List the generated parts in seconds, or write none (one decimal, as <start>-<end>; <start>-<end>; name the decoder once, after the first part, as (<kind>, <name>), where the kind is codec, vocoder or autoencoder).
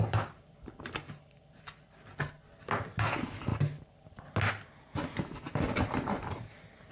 none